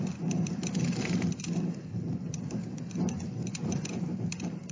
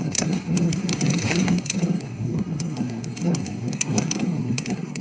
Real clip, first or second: first